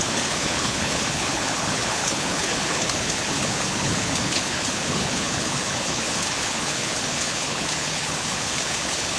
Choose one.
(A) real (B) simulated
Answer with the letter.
B